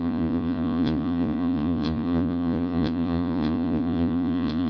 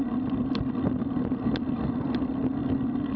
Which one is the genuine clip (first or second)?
second